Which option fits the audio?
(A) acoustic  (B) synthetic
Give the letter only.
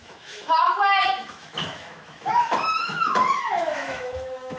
B